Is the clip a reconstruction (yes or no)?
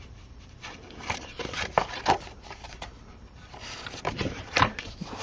yes